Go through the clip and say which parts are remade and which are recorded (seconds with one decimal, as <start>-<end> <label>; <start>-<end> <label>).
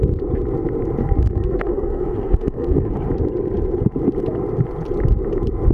0.0-1.0 recorded; 1.0-2.9 remade; 2.9-5.7 recorded